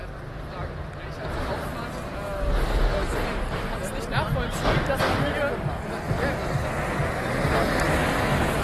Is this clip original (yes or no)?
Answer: yes